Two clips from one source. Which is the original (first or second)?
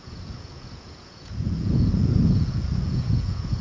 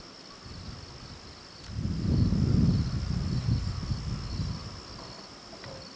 second